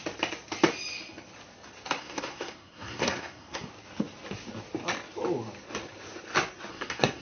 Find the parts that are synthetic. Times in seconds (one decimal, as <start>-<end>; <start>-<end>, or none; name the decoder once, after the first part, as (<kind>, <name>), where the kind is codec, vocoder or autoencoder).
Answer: 2.0-3.7 (codec, SNAC); 6.7-7.2